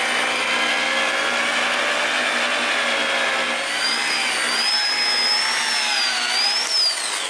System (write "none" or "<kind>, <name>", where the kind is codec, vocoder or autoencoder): none